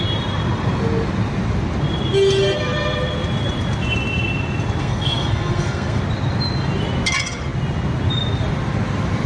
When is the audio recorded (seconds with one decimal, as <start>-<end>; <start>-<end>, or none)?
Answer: 0.0-4.8; 6.0-9.3